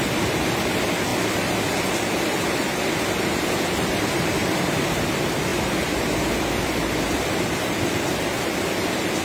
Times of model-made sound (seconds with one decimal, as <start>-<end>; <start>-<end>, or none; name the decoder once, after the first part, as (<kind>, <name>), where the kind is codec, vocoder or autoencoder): 0.0-9.2 (vocoder, BigVGAN v2)